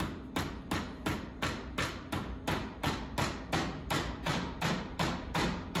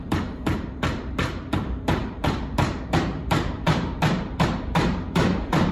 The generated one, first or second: second